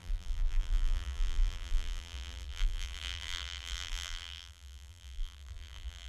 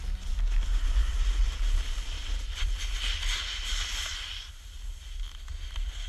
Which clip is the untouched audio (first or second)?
second